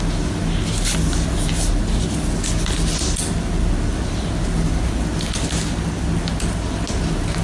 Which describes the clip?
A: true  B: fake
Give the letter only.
A